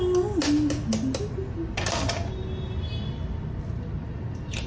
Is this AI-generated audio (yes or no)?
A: no